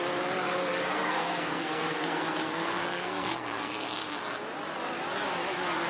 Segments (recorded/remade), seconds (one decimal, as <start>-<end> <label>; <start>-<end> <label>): 0.0-0.7 recorded; 0.7-4.2 remade; 4.2-5.9 recorded